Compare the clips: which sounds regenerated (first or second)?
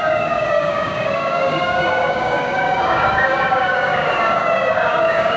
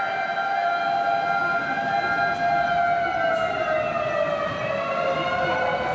first